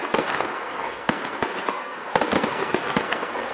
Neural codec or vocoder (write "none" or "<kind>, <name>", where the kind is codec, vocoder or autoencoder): codec, SNAC